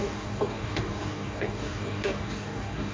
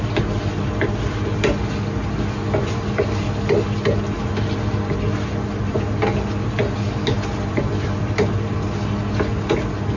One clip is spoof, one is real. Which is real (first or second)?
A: second